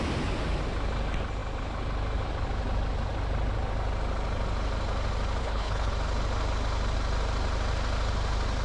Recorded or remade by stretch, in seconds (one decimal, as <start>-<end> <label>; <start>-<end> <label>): 0.0-5.4 recorded; 5.4-5.9 remade; 5.9-8.6 recorded